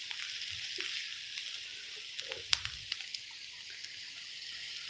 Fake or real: real